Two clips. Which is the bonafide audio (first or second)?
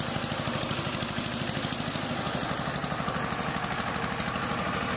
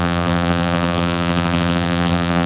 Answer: first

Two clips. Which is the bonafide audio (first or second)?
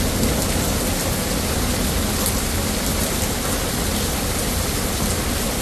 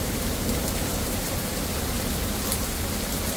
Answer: first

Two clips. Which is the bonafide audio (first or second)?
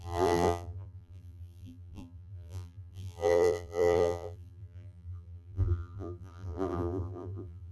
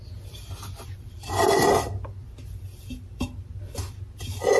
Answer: second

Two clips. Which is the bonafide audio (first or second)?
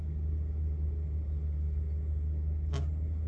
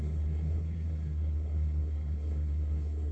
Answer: first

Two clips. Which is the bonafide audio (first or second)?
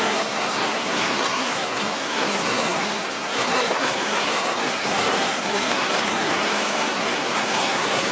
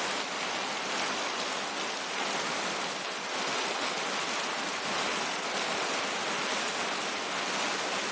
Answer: second